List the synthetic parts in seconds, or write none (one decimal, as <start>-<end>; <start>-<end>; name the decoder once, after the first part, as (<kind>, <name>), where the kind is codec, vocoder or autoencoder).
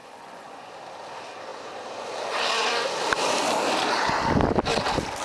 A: 0.0-0.7 (vocoder, Vocos)